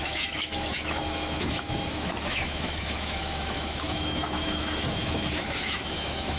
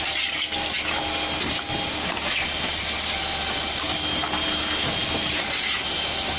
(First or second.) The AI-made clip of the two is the first